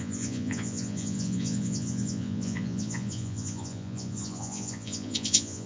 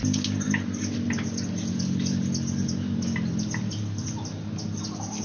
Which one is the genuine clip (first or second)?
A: second